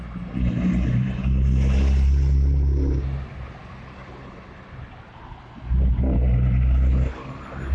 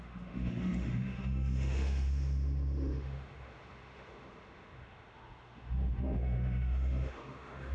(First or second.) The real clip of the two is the first